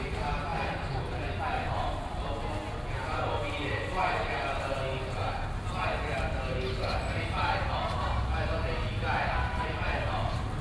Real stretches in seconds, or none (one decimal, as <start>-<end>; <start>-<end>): 0.0-10.6